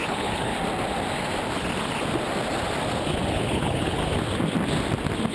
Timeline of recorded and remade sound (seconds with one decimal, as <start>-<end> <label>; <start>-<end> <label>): 0.0-0.5 remade; 0.5-3.3 recorded; 3.3-4.0 remade; 4.0-5.3 recorded